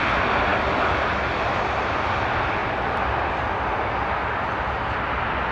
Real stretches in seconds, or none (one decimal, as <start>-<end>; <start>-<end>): 0.0-5.5